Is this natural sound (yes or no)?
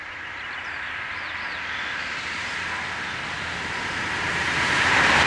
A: no